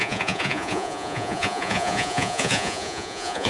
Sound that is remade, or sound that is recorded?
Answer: remade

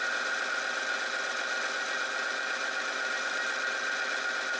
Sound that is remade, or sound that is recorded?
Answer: recorded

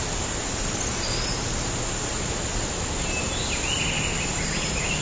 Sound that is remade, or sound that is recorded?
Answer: recorded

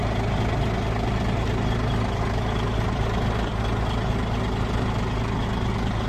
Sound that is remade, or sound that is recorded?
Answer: recorded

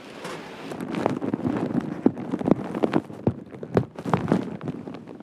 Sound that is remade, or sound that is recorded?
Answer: recorded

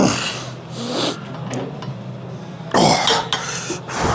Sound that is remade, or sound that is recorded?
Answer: recorded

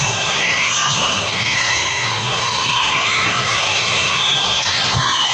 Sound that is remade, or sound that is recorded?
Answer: remade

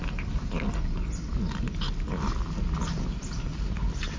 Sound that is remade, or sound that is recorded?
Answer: recorded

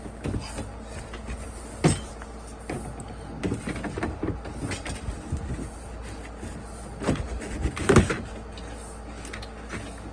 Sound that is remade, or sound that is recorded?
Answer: recorded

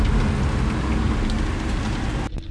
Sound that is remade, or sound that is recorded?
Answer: recorded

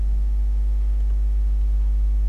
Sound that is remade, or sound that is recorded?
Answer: recorded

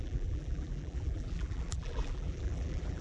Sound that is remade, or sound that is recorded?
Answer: remade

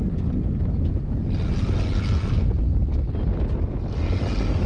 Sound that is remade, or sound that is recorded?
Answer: recorded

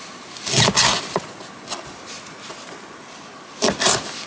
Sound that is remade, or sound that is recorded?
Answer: recorded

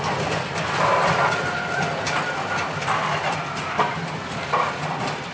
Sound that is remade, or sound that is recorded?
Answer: recorded